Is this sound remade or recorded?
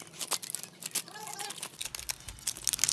recorded